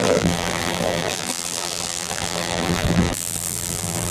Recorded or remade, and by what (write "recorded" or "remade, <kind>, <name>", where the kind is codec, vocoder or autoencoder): remade, vocoder, BigVGAN v2